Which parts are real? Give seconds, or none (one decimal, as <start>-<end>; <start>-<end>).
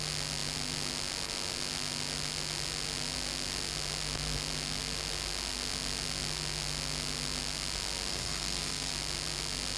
0.0-8.1; 8.9-9.8